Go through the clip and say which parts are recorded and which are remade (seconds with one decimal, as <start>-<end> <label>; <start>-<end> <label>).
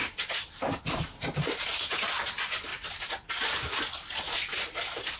0.0-0.7 remade; 0.7-5.2 recorded